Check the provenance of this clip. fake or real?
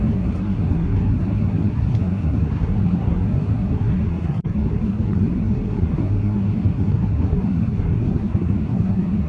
fake